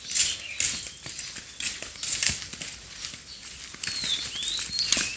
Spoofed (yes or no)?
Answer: no